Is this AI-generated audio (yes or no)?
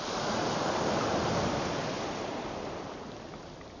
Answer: no